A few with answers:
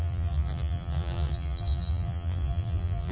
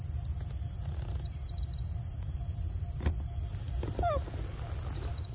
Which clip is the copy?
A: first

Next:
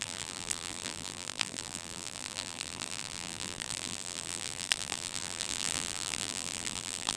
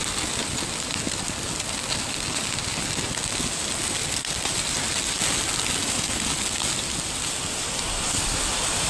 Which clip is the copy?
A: first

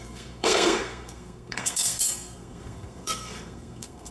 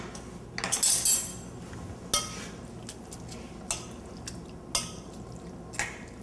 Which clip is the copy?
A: first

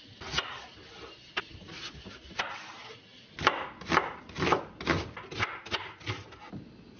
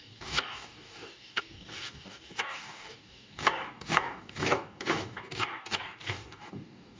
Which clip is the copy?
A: second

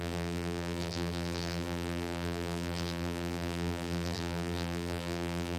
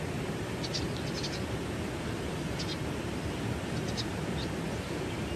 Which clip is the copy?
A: first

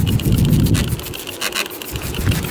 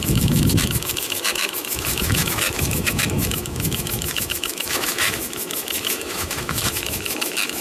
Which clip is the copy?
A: second